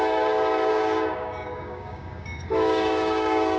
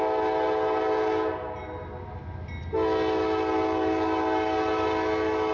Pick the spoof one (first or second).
first